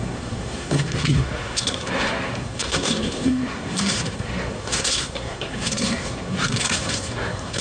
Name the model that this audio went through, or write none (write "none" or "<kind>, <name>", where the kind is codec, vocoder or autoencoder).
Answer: codec, SNAC